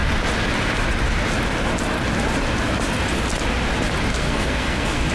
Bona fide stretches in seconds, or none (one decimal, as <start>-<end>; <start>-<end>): 0.0-4.1